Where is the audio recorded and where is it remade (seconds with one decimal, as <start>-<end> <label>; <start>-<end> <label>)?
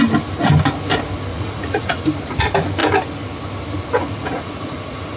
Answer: 0.0-1.3 recorded; 1.3-2.0 remade; 2.0-4.0 recorded; 4.0-5.2 remade